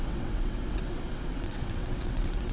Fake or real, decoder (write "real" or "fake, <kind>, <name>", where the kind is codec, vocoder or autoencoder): fake, vocoder, WaveNeXt